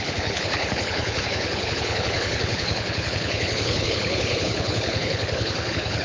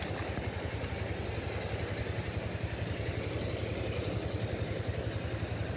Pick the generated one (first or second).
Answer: first